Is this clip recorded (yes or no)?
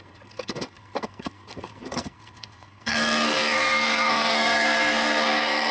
no